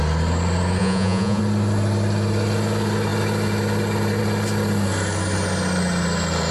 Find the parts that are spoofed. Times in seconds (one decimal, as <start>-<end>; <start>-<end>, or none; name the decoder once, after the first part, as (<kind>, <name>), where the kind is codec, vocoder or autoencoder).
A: 0.8-1.4 (vocoder, Vocos)